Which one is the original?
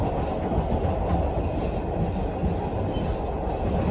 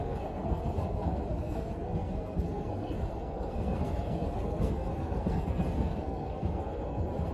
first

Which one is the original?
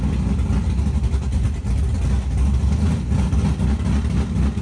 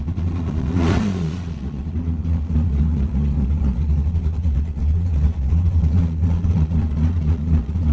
first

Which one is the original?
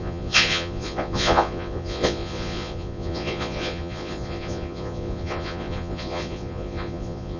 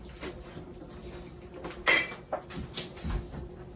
second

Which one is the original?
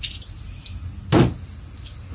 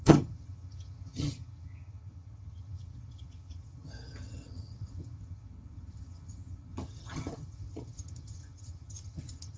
first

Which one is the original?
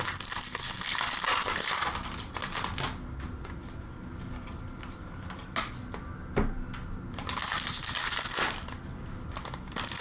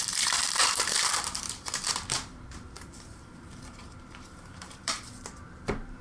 first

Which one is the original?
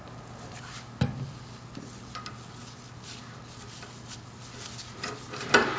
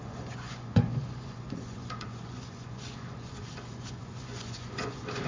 first